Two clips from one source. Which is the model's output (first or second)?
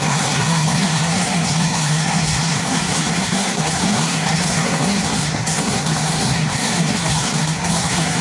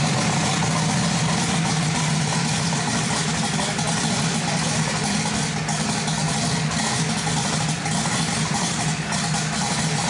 first